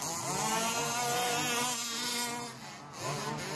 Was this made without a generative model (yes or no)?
yes